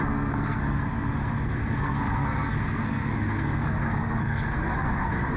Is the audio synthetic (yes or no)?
yes